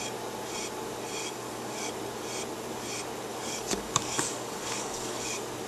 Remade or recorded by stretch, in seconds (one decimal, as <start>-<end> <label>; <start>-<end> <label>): 0.0-1.2 recorded; 1.2-1.9 remade; 1.9-3.3 recorded; 3.3-5.3 remade; 5.3-5.7 recorded